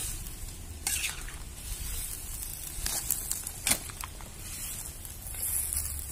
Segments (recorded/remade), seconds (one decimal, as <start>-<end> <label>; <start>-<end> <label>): 0.0-6.1 recorded